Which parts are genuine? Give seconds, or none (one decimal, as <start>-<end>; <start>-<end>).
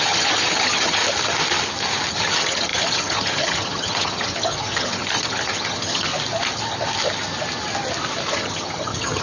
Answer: 1.0-2.1; 6.1-8.3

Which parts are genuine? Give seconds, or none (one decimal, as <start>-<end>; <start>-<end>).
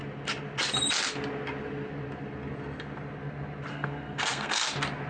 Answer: 0.0-3.7; 4.6-5.1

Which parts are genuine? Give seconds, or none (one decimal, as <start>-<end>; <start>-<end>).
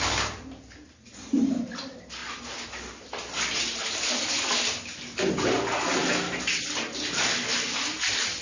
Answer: 0.0-8.4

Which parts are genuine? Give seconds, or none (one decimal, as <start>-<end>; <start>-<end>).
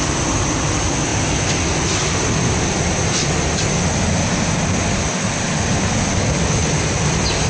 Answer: 0.0-7.5